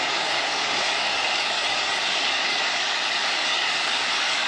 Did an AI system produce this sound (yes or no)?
yes